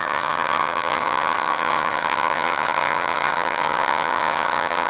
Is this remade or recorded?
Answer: remade